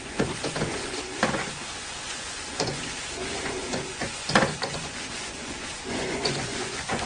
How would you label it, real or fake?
fake